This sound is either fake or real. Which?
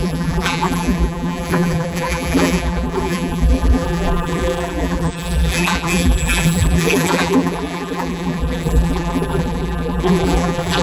fake